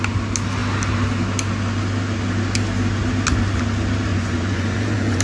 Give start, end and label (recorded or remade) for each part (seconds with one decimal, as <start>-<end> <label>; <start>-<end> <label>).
0.0-4.1 recorded; 4.1-5.2 remade